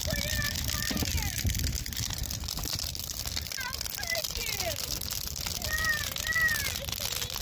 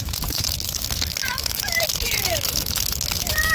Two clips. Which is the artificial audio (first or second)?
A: second